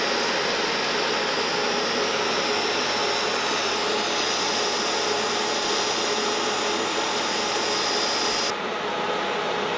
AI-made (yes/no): no